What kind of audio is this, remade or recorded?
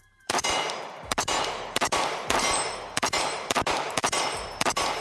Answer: remade